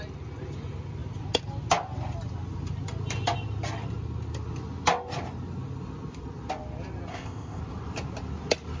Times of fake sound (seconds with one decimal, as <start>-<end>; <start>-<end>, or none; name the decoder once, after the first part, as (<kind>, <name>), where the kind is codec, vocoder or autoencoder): 7.1-7.6 (codec, ZipCodec)